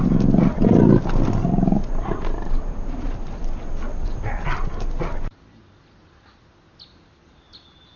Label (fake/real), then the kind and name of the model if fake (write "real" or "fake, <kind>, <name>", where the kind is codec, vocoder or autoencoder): real